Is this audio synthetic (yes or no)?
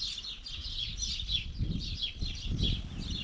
no